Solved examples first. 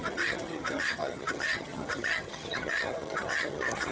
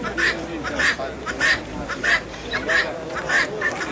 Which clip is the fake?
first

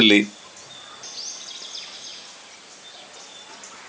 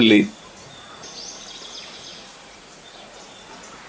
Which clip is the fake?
second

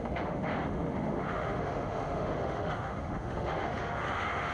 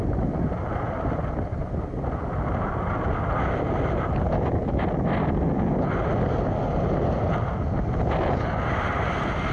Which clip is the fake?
first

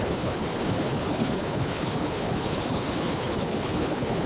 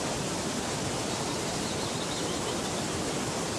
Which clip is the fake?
first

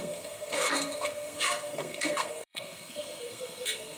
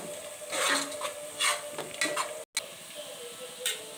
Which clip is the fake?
first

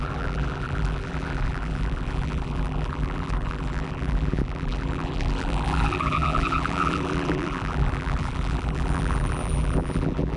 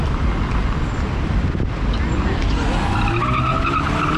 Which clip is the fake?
first